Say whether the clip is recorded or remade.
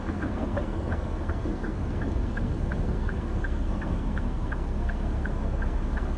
remade